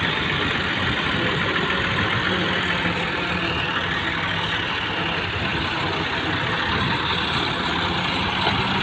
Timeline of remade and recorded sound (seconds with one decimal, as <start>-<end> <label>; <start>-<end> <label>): 0.0-8.8 recorded